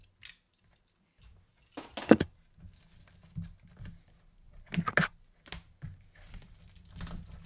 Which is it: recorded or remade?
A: recorded